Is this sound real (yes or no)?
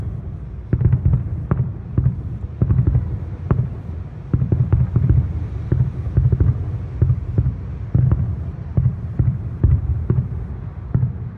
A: yes